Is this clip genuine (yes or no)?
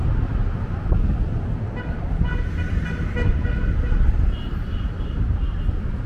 yes